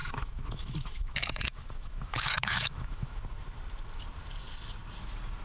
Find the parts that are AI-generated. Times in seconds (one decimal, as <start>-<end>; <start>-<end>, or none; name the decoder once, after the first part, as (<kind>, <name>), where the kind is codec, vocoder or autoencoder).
0.0-3.2 (autoencoder, DAC-VAE)